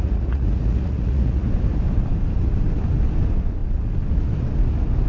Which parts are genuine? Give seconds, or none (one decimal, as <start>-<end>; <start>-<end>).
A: 1.5-5.1